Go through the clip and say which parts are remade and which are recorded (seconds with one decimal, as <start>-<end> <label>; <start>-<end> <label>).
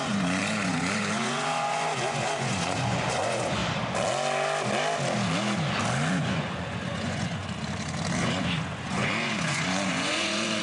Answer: 0.0-3.6 remade; 3.6-6.1 recorded; 6.1-7.4 remade; 7.4-8.2 recorded; 8.2-10.6 remade